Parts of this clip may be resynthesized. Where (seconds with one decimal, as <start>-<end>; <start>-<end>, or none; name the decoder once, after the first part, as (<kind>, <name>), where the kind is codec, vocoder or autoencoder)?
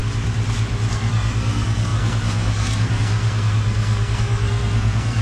0.9-5.2 (codec, SNAC)